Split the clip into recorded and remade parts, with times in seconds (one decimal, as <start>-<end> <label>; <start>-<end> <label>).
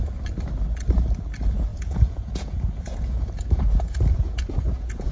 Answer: 0.0-1.7 recorded; 1.7-5.1 remade